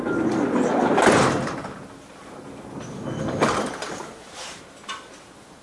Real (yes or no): yes